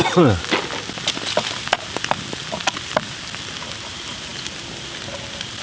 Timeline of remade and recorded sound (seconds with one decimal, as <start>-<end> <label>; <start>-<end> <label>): 0.0-5.6 recorded